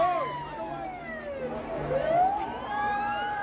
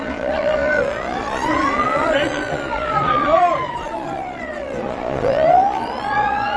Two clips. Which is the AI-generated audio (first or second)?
second